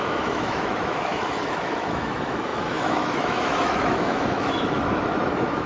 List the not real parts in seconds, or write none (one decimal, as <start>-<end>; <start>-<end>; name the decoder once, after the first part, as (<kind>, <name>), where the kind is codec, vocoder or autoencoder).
0.0-5.7 (autoencoder, DAC-VAE)